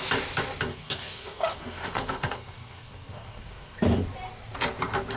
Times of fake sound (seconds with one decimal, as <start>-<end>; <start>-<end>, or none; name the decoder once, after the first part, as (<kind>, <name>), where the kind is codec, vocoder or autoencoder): 0.7-3.8 (codec, SNAC)